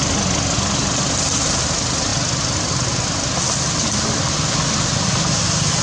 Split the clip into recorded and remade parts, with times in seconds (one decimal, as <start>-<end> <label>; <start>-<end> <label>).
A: 0.0-5.8 recorded